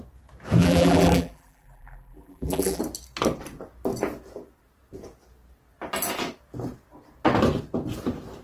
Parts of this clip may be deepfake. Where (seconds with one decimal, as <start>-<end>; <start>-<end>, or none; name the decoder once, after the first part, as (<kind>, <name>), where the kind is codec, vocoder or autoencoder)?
0.6-2.8 (vocoder, BigVGAN v2)